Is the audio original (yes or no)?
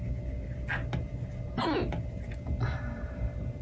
yes